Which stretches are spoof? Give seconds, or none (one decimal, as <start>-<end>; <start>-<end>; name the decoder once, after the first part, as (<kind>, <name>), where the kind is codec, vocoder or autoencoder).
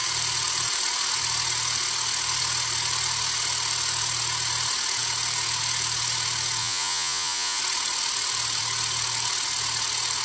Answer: 6.6-7.6 (vocoder, Vocos)